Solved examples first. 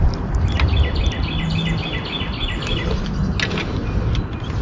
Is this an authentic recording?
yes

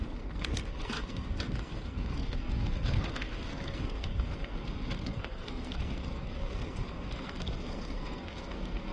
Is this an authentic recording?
no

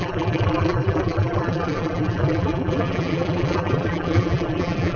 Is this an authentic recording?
no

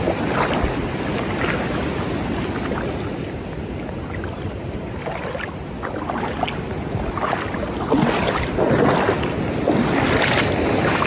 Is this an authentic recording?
yes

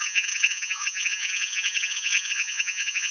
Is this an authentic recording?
no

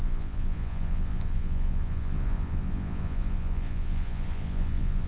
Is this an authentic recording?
no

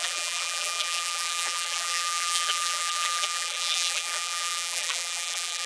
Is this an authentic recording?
no